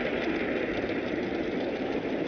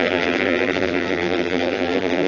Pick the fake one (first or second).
second